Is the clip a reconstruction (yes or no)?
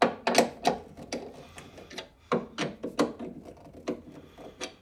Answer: no